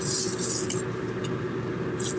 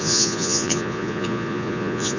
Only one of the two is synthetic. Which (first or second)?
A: second